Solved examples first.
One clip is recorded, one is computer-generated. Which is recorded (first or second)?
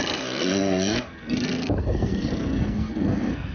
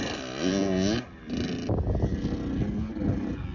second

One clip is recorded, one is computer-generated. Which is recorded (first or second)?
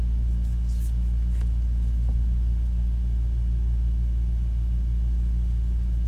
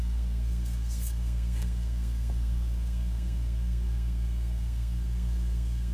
first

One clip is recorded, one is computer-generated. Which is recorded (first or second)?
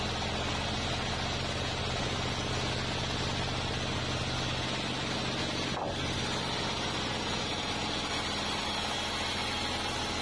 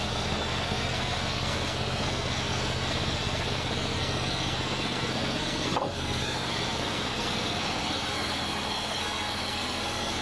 first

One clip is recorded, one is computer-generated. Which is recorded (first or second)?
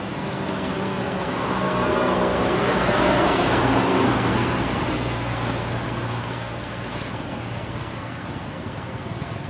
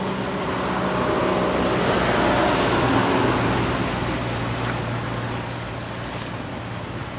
second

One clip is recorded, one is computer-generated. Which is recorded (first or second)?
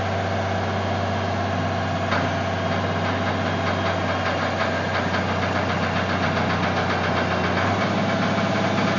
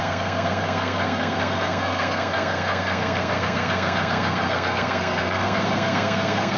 first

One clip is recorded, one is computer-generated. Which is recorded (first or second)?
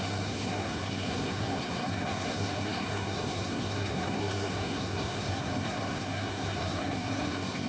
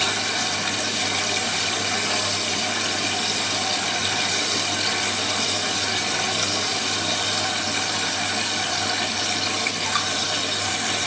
second